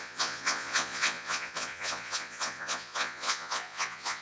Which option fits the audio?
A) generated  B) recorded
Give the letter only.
A